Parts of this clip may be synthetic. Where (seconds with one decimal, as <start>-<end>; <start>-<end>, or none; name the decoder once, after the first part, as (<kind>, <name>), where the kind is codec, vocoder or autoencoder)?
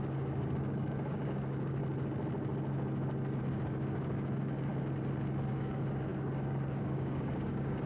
0.0-1.8 (codec, DAC); 3.4-4.7; 5.5-7.9